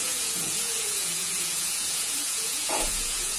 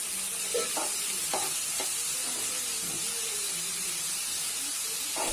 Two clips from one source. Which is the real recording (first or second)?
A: second